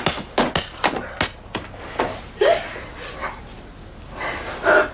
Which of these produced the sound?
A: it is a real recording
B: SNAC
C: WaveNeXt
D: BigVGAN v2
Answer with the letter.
A